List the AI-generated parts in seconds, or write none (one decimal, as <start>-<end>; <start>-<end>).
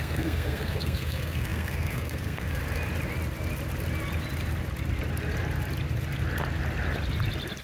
0.0-2.6